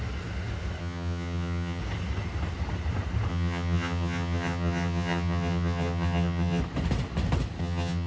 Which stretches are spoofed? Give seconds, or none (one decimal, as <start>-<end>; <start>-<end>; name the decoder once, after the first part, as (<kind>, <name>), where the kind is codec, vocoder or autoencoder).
0.8-1.8 (vocoder, HiFi-GAN); 3.3-6.6; 7.6-8.1